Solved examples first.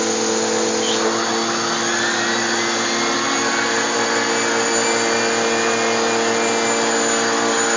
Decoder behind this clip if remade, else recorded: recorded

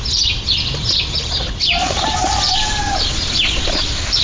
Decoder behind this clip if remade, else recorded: recorded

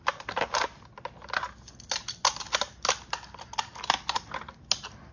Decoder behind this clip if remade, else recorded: recorded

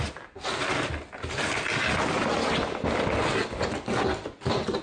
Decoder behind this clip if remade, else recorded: recorded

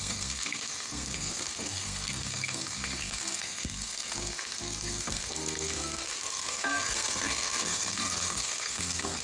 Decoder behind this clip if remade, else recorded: remade, codec, SNAC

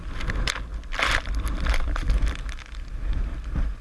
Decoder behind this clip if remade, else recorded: recorded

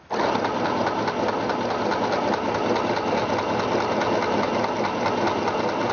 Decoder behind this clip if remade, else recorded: recorded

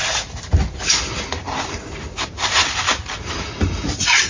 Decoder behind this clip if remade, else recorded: recorded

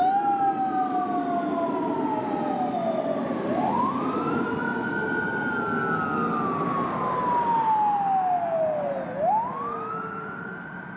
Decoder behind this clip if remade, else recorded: recorded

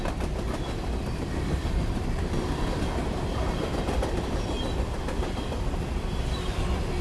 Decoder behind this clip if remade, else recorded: remade, vocoder, BigVGAN v2